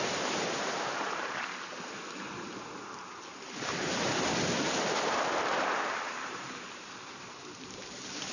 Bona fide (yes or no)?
no